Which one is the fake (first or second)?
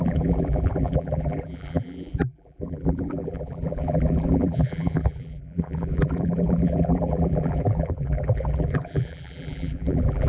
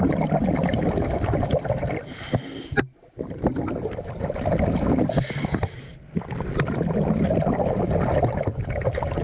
first